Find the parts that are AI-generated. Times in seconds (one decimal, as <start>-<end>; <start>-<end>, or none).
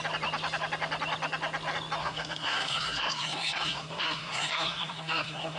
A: 2.0-5.6